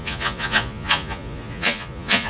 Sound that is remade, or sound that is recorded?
remade